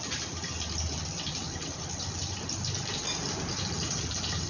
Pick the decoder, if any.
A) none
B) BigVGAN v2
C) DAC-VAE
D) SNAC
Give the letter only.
B